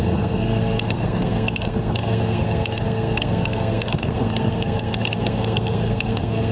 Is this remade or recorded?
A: remade